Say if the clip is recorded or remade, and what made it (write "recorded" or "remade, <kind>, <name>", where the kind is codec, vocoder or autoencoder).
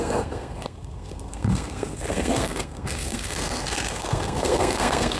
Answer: remade, codec, SNAC